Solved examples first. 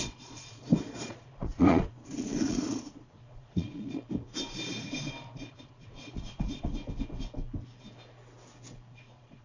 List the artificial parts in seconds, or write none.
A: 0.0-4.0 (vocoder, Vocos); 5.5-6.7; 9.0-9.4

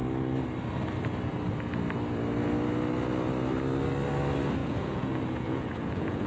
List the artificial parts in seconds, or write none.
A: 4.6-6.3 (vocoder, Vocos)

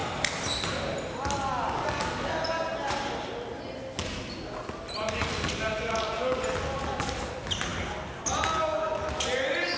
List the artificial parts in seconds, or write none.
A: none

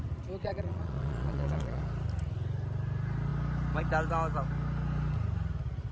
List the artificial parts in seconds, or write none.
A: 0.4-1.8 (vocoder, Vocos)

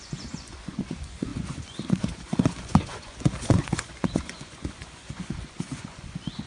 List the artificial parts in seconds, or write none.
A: 0.0-6.5 (vocoder, Vocos)

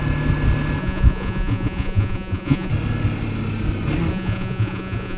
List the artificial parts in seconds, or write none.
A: 0.8-2.7 (vocoder, Vocos); 4.1-5.2

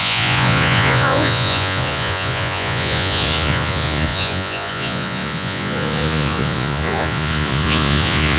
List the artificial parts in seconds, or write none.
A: 0.0-8.4 (vocoder, Vocos)